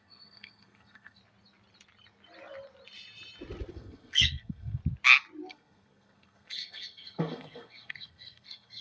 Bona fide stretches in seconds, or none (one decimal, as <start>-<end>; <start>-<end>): 1.2-3.7; 4.8-5.5